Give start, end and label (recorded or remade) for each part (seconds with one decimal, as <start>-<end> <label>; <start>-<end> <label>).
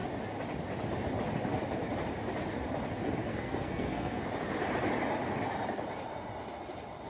0.0-3.2 recorded; 3.2-4.2 remade; 4.2-7.1 recorded